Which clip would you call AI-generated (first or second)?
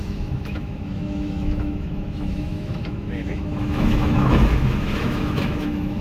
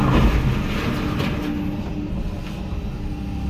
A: first